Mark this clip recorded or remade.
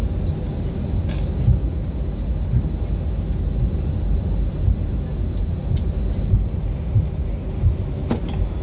recorded